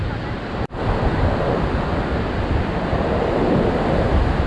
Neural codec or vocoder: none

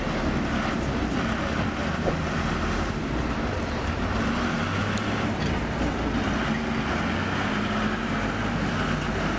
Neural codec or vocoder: none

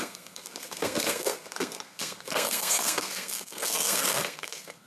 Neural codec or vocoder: codec, SNAC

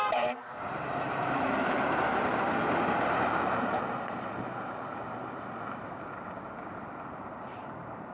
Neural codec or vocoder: vocoder, BigVGAN v2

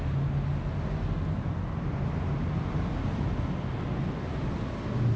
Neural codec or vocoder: none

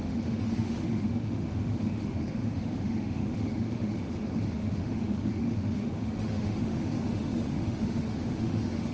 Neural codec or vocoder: autoencoder, DAC-VAE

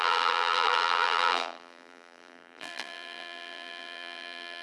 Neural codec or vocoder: vocoder, BigVGAN v2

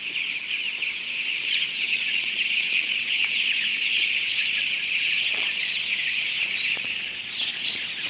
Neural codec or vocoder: vocoder, Vocos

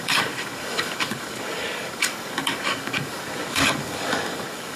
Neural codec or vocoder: codec, DAC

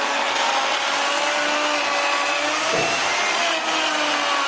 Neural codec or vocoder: none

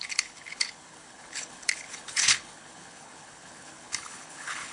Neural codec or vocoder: codec, HILCodec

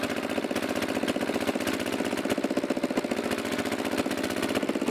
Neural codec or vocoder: none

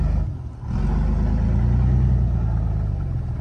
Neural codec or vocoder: none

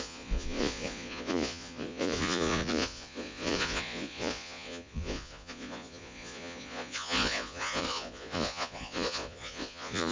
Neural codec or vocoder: vocoder, Vocos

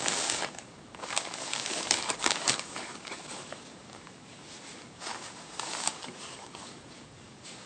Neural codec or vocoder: codec, DAC